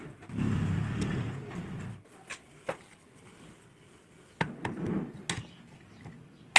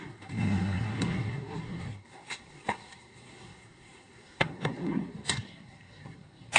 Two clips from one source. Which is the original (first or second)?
first